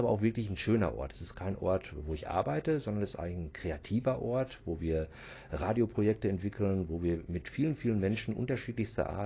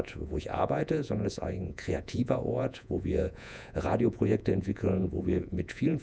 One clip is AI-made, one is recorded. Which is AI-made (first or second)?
second